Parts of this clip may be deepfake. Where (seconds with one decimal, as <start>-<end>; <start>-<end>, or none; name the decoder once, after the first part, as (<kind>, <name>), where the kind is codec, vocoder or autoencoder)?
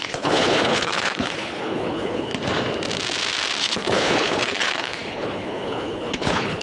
0.0-2.3 (codec, HILCodec); 3.6-6.6